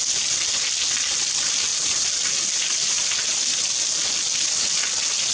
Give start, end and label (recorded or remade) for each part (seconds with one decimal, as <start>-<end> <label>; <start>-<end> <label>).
0.0-5.3 recorded